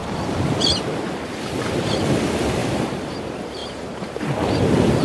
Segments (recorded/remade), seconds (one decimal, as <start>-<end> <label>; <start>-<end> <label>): 0.0-2.6 recorded; 2.6-3.2 remade; 3.2-3.6 recorded; 3.6-4.2 remade; 4.2-5.0 recorded